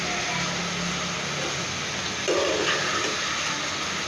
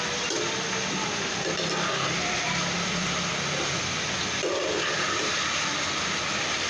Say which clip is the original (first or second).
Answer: first